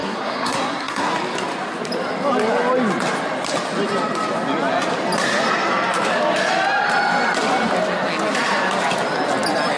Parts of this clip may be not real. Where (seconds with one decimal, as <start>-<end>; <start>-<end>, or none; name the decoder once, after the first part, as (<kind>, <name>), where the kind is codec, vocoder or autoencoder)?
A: 0.0-1.1 (codec, SNAC)